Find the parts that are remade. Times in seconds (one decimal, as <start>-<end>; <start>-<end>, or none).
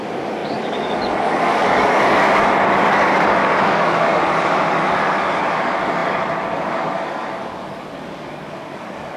0.0-9.2